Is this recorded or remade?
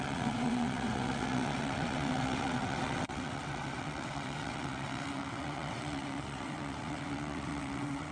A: remade